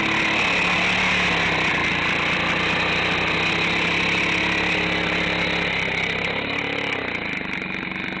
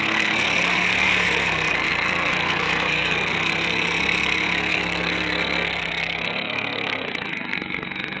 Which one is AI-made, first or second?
second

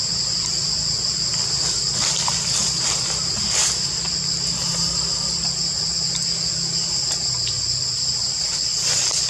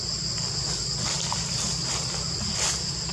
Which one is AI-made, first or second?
second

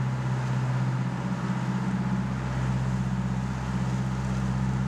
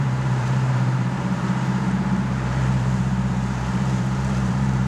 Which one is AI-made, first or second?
second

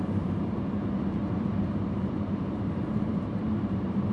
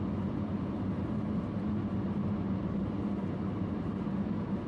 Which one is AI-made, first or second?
first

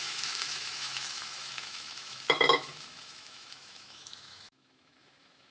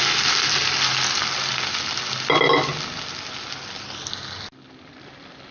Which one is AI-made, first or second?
first